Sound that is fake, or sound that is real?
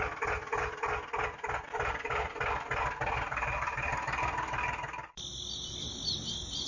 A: real